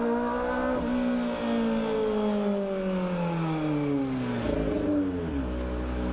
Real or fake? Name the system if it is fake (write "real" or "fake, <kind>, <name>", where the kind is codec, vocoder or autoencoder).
real